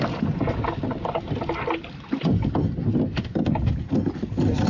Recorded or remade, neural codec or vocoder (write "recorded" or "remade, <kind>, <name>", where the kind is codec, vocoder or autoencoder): recorded